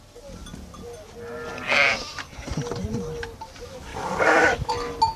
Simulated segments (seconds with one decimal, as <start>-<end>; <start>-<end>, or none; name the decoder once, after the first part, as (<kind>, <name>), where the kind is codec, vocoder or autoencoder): 3.9-4.7 (codec, DAC)